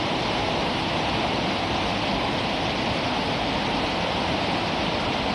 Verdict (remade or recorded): recorded